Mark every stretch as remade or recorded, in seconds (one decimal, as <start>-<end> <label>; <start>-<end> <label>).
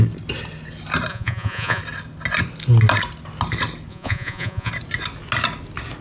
0.0-1.1 recorded; 1.1-1.8 remade; 1.8-3.9 recorded; 3.9-4.7 remade; 4.7-6.0 recorded